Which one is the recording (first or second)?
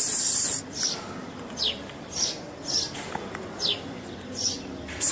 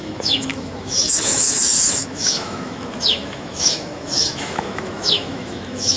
first